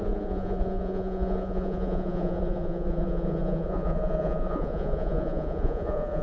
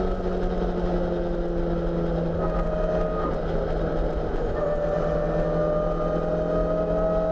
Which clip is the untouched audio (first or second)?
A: second